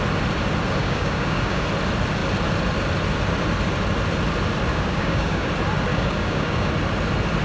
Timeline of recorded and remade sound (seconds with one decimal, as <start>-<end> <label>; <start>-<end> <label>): 0.0-0.8 recorded; 0.8-1.6 remade; 1.6-4.7 recorded; 4.7-5.5 remade; 5.5-5.9 recorded; 5.9-6.7 remade; 6.7-7.4 recorded